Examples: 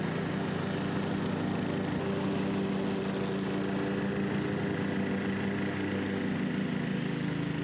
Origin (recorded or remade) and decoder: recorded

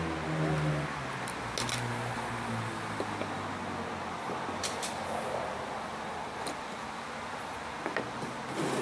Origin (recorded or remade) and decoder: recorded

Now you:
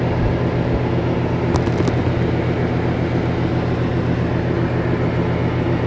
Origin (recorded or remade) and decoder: recorded